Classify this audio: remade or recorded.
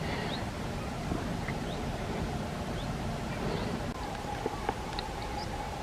recorded